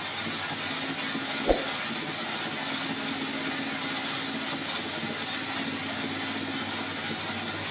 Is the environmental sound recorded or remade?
recorded